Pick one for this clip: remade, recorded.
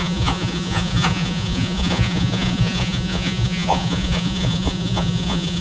remade